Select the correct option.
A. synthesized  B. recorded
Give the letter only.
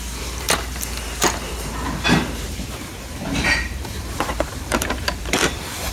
A